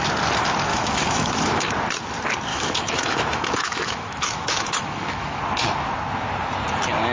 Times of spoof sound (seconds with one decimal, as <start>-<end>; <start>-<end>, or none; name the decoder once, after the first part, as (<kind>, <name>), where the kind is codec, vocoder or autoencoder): 0.7-1.7 (autoencoder, DAC-VAE); 2.5-5.4